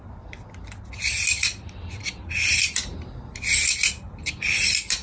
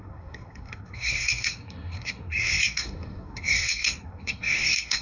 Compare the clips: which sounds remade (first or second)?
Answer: second